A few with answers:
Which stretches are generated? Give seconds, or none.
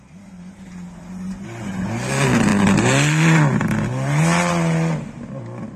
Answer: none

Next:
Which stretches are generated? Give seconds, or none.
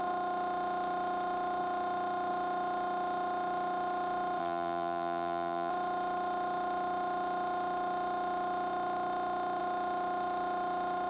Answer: 4.4-5.7 (vocoder, BigVGAN v2)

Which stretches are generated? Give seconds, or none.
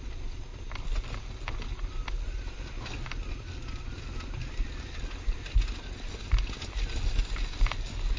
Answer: none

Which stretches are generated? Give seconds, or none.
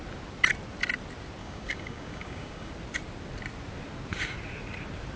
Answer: 1.4-2.7 (codec, DAC)